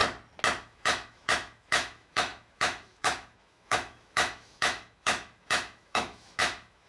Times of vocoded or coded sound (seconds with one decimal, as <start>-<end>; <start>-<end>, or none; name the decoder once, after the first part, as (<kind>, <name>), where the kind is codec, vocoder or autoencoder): 0.6-6.9 (autoencoder, DAC-VAE)